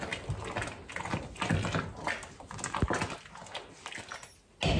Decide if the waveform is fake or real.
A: real